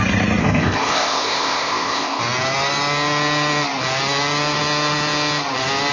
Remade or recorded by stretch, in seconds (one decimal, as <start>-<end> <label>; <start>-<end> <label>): 0.0-0.4 recorded; 0.4-2.2 remade; 2.2-5.9 recorded